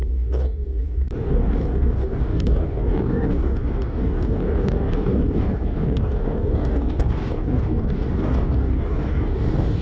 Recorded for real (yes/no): no